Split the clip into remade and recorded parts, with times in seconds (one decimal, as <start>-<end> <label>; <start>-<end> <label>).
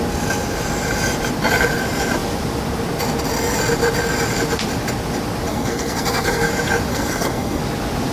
0.0-5.5 recorded; 5.5-6.5 remade; 6.5-6.9 recorded; 6.9-7.6 remade; 7.6-8.1 recorded